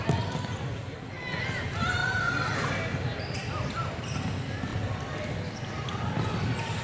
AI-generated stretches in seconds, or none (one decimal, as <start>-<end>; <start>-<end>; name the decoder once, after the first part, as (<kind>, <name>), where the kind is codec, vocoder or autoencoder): 3.4-4.0 (vocoder, BigVGAN v2); 4.7-5.4